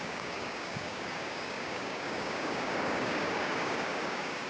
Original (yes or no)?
no